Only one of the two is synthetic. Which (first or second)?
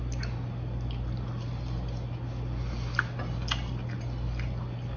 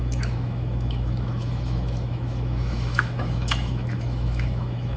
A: second